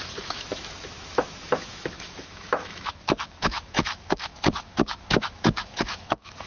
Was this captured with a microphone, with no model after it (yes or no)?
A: no